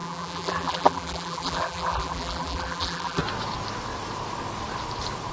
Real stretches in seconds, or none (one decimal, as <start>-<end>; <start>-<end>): 3.2-5.3